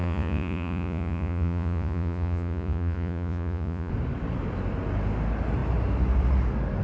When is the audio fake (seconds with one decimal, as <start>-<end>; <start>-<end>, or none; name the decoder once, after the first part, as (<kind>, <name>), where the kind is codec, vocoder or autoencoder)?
0.0-3.9 (vocoder, Vocos)